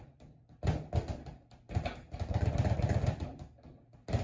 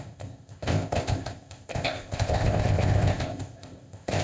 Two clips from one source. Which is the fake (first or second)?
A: second